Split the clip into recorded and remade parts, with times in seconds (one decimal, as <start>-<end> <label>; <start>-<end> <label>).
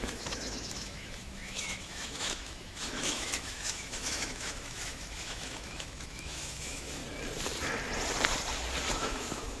0.0-7.0 remade; 7.0-8.9 recorded; 8.9-9.6 remade